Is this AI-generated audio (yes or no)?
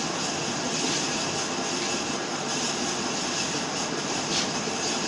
no